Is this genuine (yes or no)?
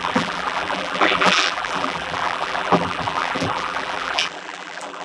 no